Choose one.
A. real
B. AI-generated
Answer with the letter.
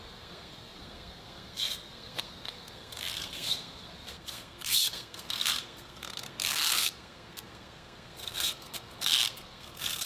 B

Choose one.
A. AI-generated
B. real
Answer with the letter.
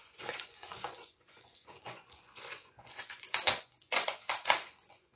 A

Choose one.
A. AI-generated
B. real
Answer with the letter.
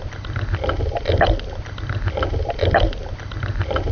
B